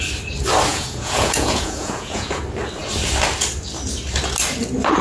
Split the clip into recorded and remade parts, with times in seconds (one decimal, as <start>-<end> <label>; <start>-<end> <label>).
0.0-0.7 recorded; 0.7-2.4 remade; 2.4-5.0 recorded